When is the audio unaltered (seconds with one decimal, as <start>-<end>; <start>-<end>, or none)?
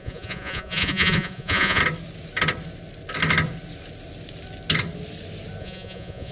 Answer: 1.8-5.6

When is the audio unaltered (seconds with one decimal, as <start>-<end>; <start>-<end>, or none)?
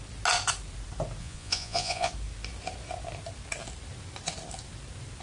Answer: 0.0-1.2; 2.1-5.2